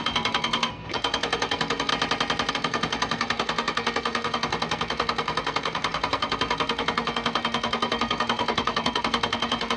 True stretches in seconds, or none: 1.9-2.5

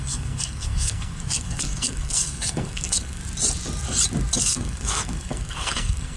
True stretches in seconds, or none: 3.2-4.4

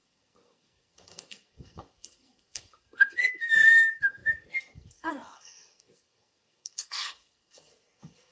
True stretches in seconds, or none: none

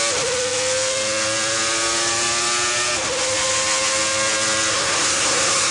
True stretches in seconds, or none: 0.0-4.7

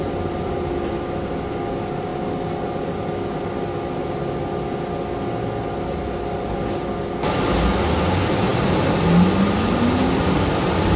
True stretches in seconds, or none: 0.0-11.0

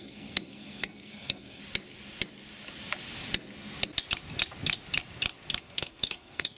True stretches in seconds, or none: 1.6-5.6

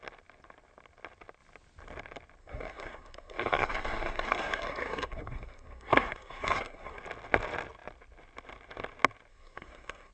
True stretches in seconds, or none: 0.0-2.4; 7.0-9.3